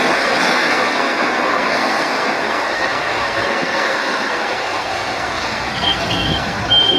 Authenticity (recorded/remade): remade